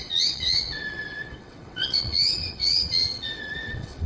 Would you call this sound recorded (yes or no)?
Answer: no